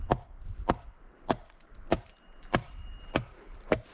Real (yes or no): yes